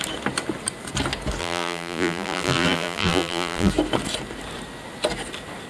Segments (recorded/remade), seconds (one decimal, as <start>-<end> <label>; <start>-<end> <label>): 0.0-1.4 recorded; 1.4-3.7 remade; 3.7-5.7 recorded